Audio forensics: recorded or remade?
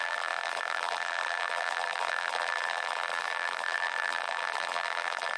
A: remade